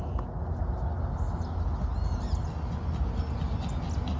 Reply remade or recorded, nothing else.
recorded